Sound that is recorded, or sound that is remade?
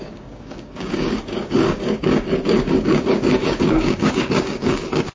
remade